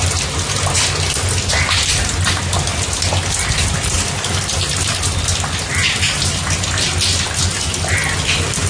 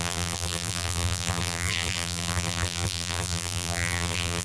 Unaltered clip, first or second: first